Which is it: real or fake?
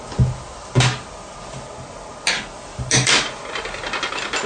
real